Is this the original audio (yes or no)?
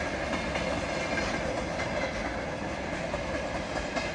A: yes